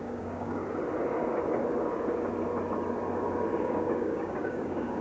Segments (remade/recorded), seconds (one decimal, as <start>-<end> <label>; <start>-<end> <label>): 0.0-0.6 remade; 0.6-3.6 recorded; 3.6-5.0 remade